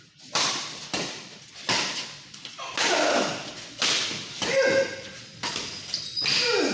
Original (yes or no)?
yes